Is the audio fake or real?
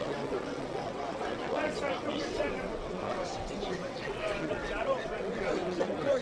fake